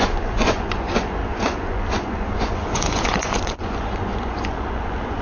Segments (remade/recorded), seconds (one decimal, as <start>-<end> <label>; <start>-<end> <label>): 0.0-5.2 remade

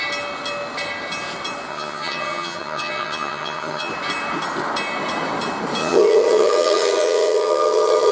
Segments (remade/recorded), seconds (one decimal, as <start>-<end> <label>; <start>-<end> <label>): 0.0-1.7 recorded; 1.7-3.9 remade; 3.9-5.8 recorded; 5.8-8.1 remade

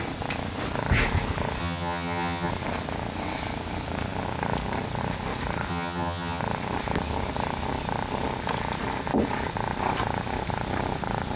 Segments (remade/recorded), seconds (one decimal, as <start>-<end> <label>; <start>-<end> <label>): 0.0-1.6 recorded; 1.6-2.5 remade; 2.5-5.7 recorded; 5.7-6.4 remade; 6.4-11.4 recorded

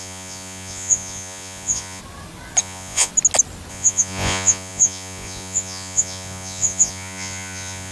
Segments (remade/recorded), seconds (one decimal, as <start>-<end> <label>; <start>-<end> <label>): 0.0-2.0 remade; 2.0-2.6 recorded; 2.6-3.1 remade; 3.1-3.7 recorded; 3.7-7.9 remade

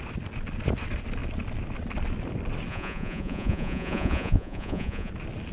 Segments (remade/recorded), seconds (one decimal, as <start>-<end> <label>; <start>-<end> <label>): 0.0-2.7 recorded; 2.7-5.1 remade; 5.1-5.5 recorded